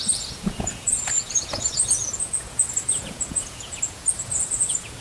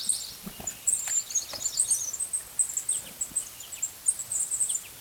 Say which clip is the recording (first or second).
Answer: second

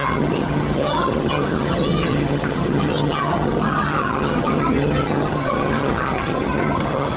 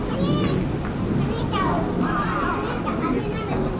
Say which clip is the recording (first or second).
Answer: second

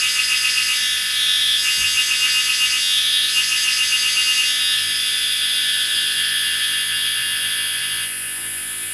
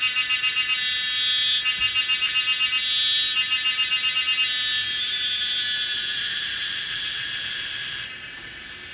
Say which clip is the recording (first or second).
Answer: second